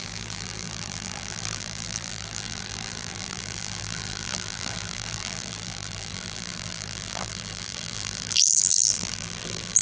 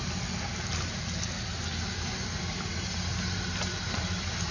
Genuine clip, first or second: second